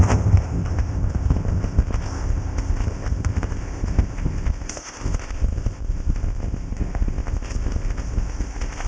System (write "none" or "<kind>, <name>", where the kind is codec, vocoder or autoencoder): codec, ZipCodec